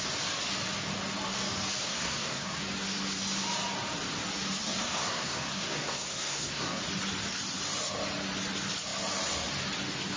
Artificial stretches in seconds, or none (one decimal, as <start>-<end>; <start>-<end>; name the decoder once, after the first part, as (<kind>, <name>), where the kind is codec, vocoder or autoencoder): 1.8-2.6 (codec, SNAC); 4.6-6.8